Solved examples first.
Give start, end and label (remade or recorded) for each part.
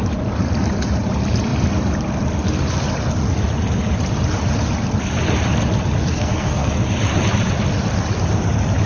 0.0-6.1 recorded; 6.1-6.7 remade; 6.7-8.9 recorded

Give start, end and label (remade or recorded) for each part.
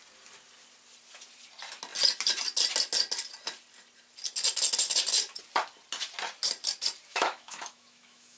0.0-7.1 recorded; 7.1-8.4 remade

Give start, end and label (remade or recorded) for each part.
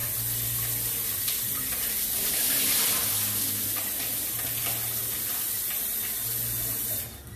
0.0-7.4 recorded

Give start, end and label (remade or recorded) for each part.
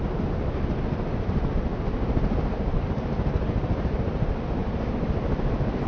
0.0-5.9 recorded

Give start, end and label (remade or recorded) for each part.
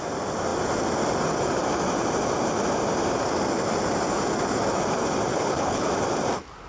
0.0-5.3 recorded; 5.3-5.9 remade; 5.9-6.7 recorded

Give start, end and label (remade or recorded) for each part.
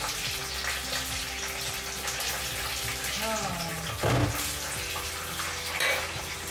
0.0-6.5 recorded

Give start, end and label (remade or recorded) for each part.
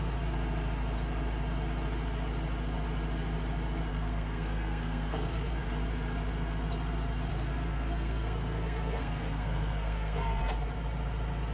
0.0-3.9 recorded; 3.9-5.6 remade; 5.6-7.3 recorded; 7.3-10.4 remade; 10.4-11.5 recorded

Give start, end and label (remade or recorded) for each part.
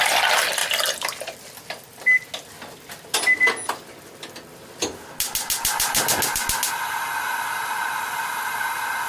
0.0-9.1 recorded